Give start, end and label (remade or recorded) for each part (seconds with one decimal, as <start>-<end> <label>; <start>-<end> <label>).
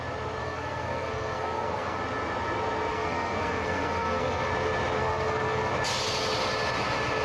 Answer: 0.0-0.4 recorded; 0.4-2.0 remade; 2.0-2.9 recorded; 2.9-4.5 remade; 4.5-5.0 recorded; 5.0-5.7 remade; 5.7-7.2 recorded